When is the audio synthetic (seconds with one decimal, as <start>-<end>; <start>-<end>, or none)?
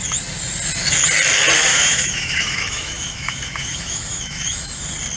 1.7-4.8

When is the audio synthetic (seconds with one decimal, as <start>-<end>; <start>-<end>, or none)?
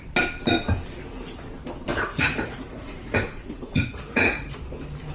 1.9-4.6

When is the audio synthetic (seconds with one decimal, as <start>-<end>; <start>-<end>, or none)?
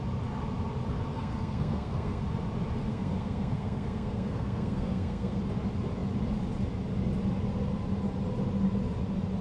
1.1-2.2; 2.9-5.4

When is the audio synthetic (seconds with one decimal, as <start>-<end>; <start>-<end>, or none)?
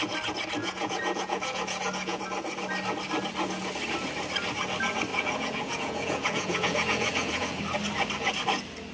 0.6-2.2; 5.1-7.6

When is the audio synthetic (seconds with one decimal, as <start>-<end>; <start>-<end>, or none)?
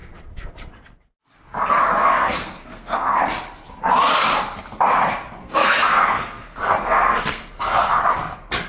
2.0-3.2; 5.4-8.0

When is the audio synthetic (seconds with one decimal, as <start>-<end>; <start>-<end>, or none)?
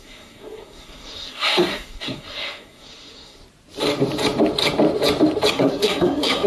0.0-3.4; 5.5-6.5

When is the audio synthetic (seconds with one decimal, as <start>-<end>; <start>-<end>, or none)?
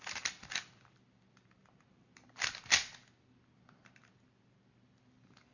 none